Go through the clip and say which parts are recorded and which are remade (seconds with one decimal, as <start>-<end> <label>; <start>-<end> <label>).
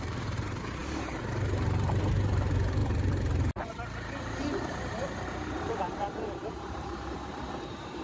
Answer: 0.0-8.0 remade